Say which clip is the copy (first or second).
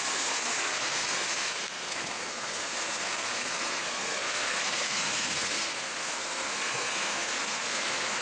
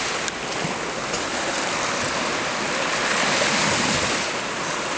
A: first